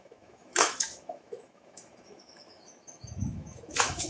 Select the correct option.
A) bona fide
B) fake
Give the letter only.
B